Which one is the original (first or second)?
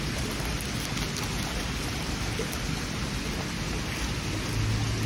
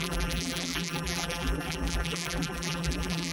first